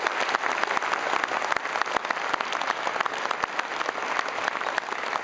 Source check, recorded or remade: recorded